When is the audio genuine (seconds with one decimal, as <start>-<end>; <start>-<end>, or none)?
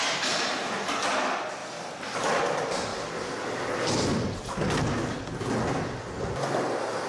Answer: 0.0-7.1